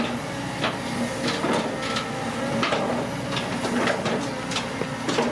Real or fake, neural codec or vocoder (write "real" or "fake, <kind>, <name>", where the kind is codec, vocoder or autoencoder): real